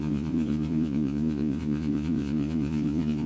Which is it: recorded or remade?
remade